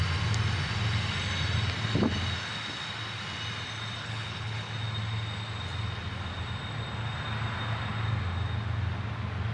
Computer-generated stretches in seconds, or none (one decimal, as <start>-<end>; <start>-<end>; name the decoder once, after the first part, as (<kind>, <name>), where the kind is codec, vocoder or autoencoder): 4.0-4.7 (codec, HILCodec)